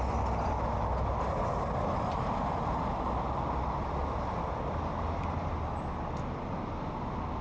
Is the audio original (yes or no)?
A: yes